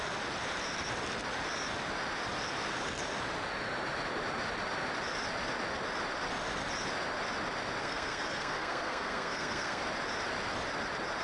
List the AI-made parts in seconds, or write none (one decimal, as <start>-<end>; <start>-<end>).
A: 7.8-9.8